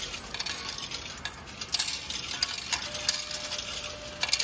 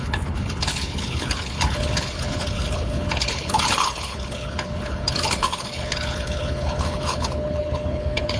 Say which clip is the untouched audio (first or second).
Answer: first